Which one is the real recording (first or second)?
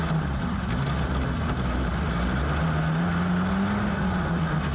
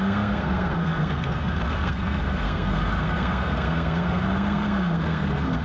first